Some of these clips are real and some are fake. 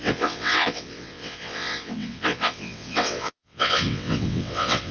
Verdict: fake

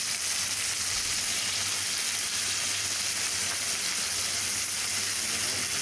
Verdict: real